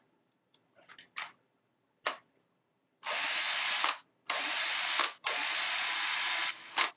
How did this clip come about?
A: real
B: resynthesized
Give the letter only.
A